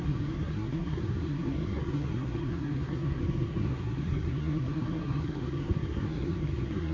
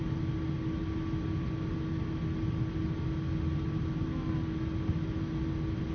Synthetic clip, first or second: first